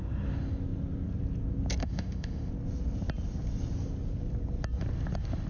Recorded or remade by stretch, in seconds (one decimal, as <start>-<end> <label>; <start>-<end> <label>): 0.0-1.8 recorded; 1.8-2.5 remade; 2.5-5.5 recorded